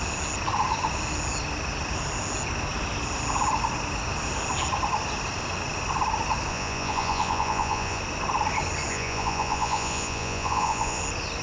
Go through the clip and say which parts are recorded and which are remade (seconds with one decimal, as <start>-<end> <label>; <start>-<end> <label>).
0.0-6.5 recorded; 6.5-8.0 remade; 8.0-8.9 recorded; 8.9-11.0 remade; 11.0-11.4 recorded